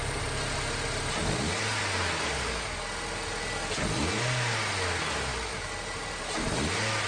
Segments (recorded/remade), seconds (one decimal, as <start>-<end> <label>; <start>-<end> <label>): 0.0-7.1 recorded